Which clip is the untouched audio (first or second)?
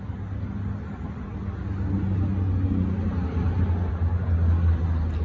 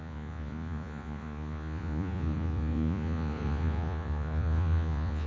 first